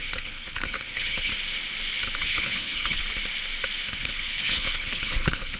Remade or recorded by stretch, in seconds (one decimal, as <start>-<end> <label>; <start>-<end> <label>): 0.0-1.3 remade; 1.3-2.2 recorded; 2.2-3.0 remade; 3.0-3.9 recorded; 3.9-5.6 remade